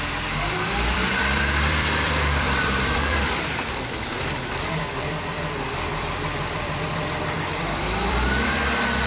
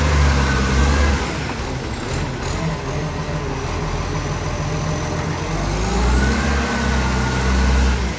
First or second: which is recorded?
second